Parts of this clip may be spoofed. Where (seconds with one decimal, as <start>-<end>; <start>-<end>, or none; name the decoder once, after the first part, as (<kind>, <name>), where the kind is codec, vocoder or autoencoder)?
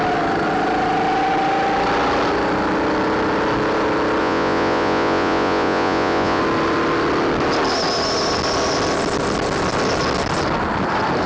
4.2-6.4 (vocoder, Vocos)